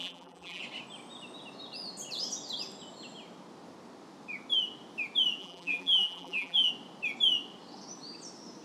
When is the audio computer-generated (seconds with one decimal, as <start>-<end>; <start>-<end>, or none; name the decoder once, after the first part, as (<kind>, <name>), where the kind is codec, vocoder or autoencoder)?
0.0-0.6 (vocoder, BigVGAN v2); 5.4-6.7

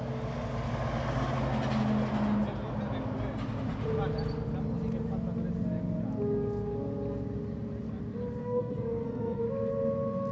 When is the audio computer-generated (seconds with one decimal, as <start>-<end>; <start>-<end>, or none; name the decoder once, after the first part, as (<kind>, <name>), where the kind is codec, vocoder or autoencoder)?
8.4-9.4 (codec, SNAC)

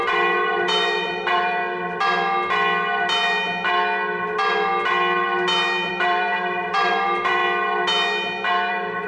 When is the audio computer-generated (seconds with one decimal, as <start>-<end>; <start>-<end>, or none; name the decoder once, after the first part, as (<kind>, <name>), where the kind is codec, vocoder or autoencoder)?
0.0-1.6 (vocoder, BigVGAN v2); 5.9-7.4; 8.7-9.1

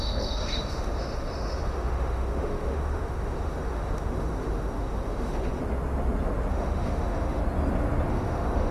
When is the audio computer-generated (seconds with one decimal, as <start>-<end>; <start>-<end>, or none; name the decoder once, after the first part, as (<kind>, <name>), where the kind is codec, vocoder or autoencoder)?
0.0-5.6 (autoencoder, DAC-VAE); 6.5-7.4; 8.1-8.7

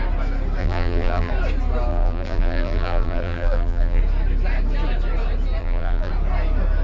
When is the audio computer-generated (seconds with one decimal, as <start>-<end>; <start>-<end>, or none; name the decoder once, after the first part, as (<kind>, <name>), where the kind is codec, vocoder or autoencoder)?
0.6-1.3 (vocoder, BigVGAN v2); 1.9-4.0; 5.6-6.1